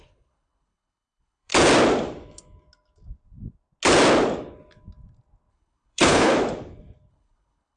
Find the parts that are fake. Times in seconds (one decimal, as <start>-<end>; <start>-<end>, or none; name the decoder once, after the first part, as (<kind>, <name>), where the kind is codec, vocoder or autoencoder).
0.0-1.5 (codec, HILCodec); 5.5-6.3; 7.1-7.8